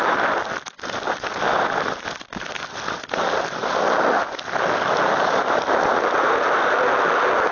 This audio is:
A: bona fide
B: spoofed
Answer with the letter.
A